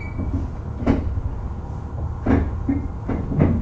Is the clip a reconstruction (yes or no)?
no